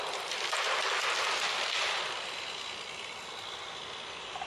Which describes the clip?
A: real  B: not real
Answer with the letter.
A